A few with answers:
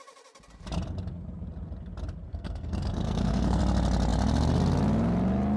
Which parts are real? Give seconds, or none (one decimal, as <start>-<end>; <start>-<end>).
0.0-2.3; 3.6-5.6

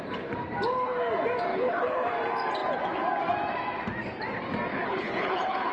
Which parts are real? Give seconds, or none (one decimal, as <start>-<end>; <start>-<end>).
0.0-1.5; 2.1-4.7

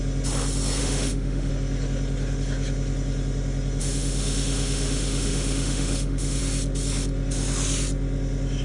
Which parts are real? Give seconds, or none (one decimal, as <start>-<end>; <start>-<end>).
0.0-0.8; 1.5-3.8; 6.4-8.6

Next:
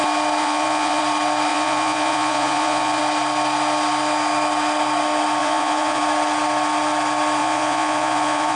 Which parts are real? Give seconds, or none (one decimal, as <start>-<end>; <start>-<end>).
0.0-0.4; 1.0-1.5; 3.0-5.4; 6.0-7.4

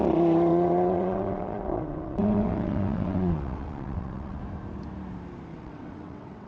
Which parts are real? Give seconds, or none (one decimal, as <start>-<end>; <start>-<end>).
0.0-0.5; 4.4-5.5